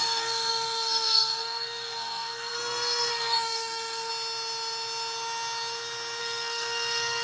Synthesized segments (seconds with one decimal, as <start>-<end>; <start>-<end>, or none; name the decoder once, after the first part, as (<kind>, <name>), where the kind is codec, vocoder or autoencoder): 0.0-4.1 (codec, SNAC); 6.2-7.2